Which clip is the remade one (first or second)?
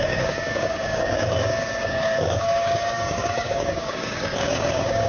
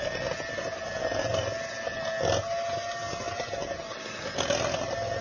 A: first